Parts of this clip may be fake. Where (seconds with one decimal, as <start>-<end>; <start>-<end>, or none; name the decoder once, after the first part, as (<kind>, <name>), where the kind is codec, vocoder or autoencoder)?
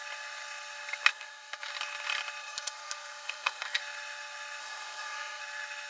1.1-1.7 (codec, SNAC); 2.4-3.8; 4.6-5.4